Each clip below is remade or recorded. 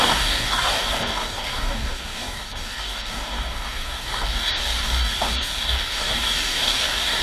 remade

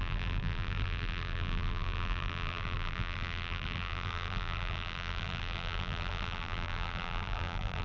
remade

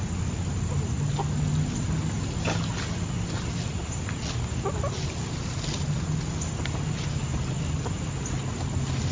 recorded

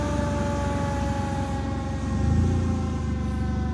recorded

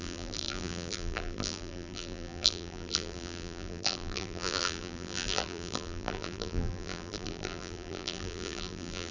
remade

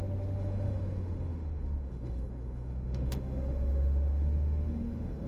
remade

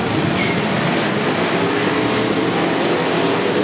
recorded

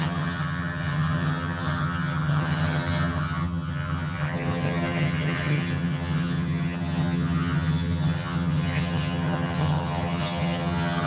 remade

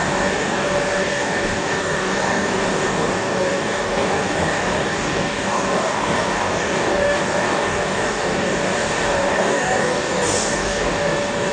remade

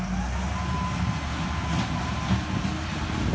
recorded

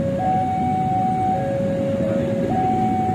recorded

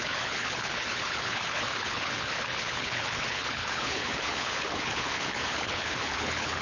remade